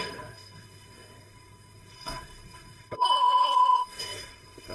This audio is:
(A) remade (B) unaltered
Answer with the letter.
A